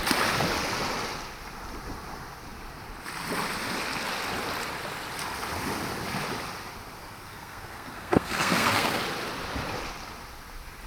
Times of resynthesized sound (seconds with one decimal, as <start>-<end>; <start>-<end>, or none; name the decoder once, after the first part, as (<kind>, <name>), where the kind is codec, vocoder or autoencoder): 7.0-9.0 (codec, SNAC)